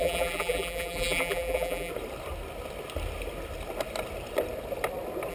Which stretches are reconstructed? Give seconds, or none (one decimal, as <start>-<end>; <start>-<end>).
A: 0.0-1.9